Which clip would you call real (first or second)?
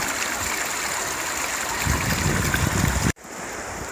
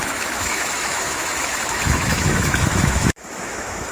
first